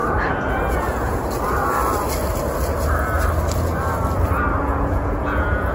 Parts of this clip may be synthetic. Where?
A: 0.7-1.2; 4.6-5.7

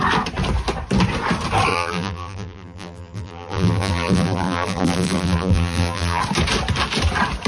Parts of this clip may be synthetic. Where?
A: 1.7-6.2

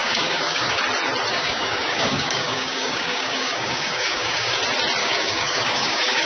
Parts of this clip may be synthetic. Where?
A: 0.0-0.8; 1.3-4.6; 5.0-6.3

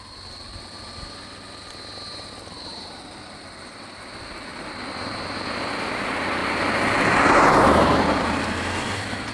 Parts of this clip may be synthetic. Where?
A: 0.0-0.5; 2.6-6.4; 7.5-9.3

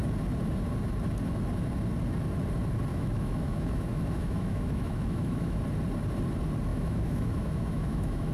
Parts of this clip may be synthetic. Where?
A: 2.9-5.6; 6.7-8.3

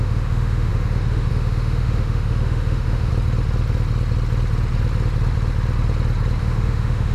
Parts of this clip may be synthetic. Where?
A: 0.0-3.1; 6.4-7.1

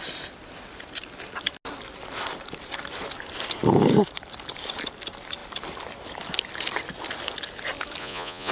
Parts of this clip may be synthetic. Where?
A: 8.0-8.5

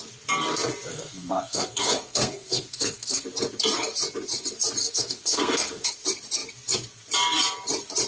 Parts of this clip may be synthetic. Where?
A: 0.9-3.2; 4.8-5.9